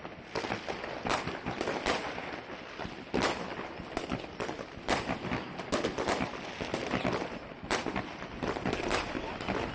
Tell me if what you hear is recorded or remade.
recorded